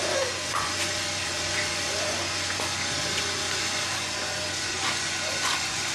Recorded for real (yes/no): no